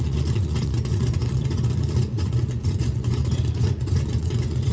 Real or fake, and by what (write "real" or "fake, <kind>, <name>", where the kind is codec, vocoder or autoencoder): fake, vocoder, Vocos